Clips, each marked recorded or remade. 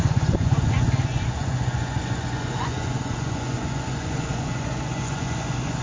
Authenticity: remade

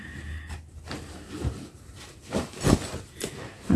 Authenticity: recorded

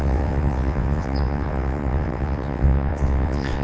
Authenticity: remade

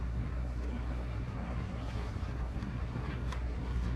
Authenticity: remade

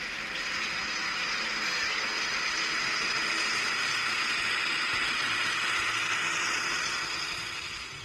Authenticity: recorded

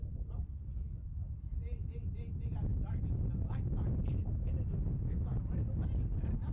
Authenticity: recorded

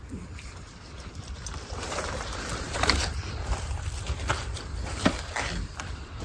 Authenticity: remade